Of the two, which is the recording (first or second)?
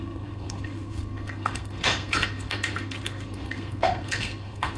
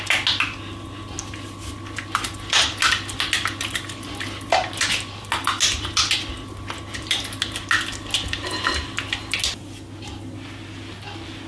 second